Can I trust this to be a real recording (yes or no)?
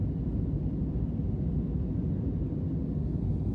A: yes